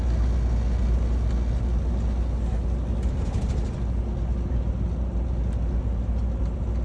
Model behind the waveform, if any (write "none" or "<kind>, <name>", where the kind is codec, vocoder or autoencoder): none